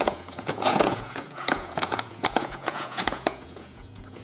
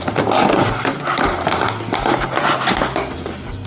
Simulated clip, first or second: first